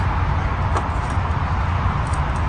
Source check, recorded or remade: recorded